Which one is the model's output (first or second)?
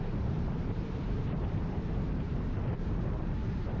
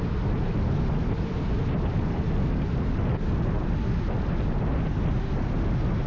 first